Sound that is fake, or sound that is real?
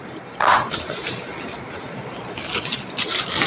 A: real